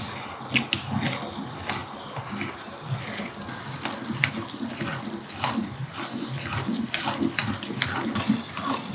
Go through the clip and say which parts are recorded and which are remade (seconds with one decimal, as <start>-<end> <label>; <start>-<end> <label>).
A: 0.0-8.9 recorded